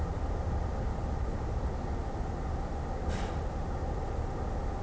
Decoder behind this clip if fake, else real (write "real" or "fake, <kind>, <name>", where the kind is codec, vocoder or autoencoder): real